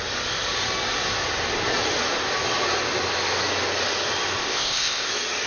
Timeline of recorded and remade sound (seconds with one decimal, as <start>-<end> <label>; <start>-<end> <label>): 0.0-4.4 recorded; 4.4-5.1 remade; 5.1-5.5 recorded